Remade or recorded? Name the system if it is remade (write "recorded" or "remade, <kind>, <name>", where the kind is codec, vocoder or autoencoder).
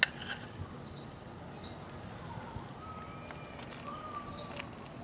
recorded